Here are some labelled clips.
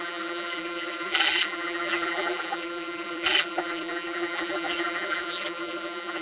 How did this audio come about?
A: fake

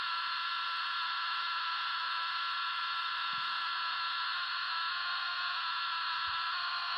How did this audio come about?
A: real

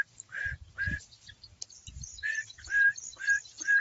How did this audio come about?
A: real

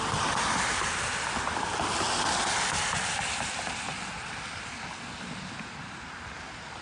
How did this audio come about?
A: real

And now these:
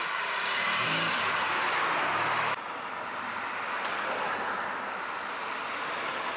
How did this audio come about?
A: fake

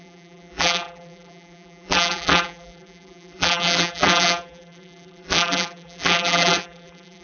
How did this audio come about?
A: fake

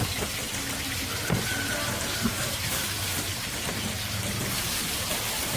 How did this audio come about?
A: fake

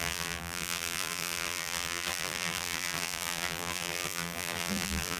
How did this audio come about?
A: fake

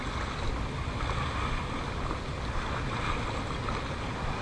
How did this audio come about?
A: real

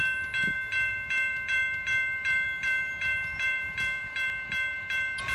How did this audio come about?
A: fake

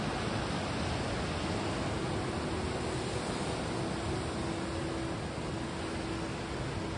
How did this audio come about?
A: real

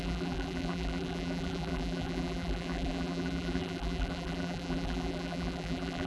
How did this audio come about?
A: fake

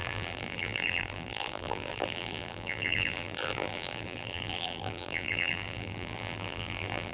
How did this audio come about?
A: fake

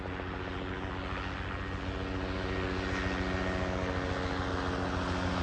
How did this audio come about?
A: real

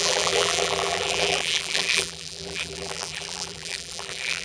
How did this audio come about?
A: fake